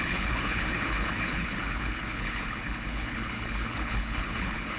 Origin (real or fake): fake